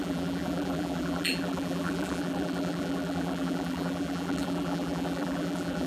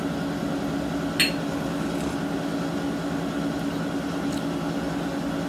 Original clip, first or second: second